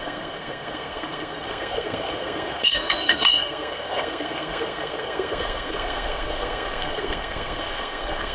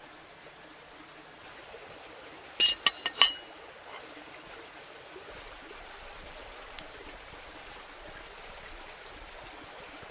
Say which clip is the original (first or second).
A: second